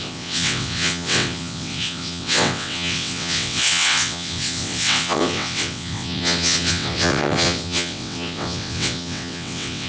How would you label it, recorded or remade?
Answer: remade